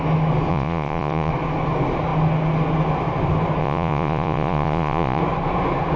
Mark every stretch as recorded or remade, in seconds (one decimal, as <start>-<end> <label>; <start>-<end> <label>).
0.0-0.5 recorded; 0.5-1.3 remade; 1.3-3.6 recorded; 3.6-5.2 remade; 5.2-6.0 recorded